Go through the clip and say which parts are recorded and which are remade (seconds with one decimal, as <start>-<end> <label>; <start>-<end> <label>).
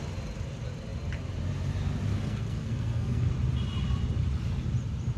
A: 0.0-2.1 recorded; 2.1-3.3 remade; 3.3-5.2 recorded